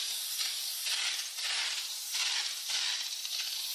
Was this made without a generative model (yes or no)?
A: yes